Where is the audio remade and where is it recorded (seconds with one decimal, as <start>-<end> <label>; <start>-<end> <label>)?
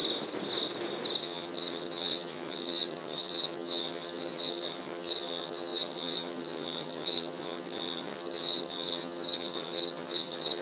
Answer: 0.0-1.2 recorded; 1.2-10.6 remade